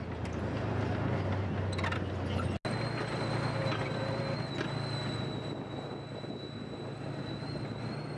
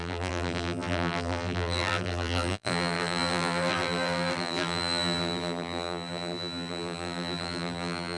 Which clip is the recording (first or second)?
first